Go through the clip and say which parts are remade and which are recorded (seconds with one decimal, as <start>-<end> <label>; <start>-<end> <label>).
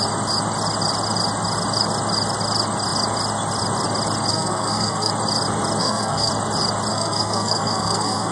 0.0-4.3 recorded; 4.3-5.1 remade; 5.1-5.8 recorded; 5.8-6.3 remade; 6.3-6.9 recorded; 6.9-8.3 remade